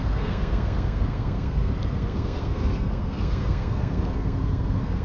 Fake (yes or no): yes